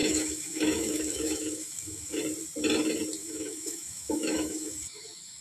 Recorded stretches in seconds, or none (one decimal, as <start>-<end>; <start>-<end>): 2.2-3.2